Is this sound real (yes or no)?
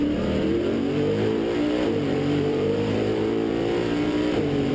no